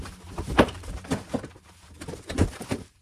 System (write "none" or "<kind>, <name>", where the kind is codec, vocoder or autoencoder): vocoder, BigVGAN v2